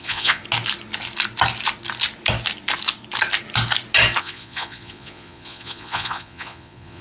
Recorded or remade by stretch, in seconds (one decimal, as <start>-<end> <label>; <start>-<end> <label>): 0.0-0.4 remade; 0.4-4.2 recorded; 4.2-7.0 remade